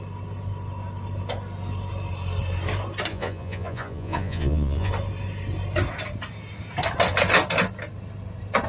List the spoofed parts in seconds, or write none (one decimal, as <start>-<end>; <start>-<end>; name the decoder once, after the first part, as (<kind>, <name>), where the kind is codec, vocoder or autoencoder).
3.1-4.9 (vocoder, Vocos)